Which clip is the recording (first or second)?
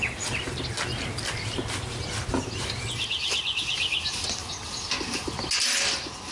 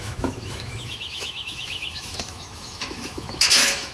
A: first